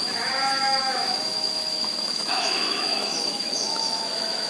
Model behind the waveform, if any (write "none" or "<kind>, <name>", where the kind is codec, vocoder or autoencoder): autoencoder, DAC-VAE